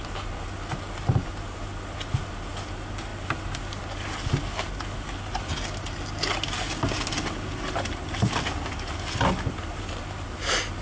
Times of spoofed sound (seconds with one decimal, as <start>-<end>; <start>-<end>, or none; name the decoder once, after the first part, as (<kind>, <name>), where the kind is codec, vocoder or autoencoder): none